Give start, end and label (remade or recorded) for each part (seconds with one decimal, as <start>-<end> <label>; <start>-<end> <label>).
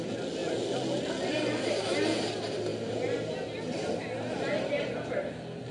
0.0-5.7 recorded